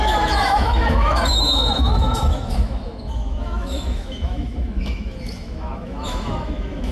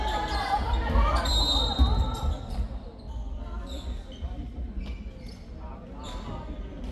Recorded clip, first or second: second